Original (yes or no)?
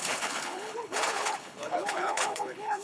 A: no